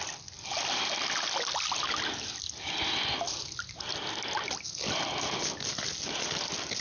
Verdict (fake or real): real